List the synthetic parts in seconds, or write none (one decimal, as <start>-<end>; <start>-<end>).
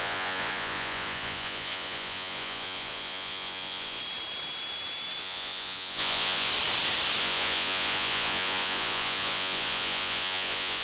0.0-4.0; 5.2-6.5; 7.2-10.8